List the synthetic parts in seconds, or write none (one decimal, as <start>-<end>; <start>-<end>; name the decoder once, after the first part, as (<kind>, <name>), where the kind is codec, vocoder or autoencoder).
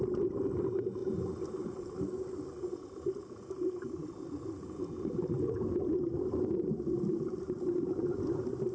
none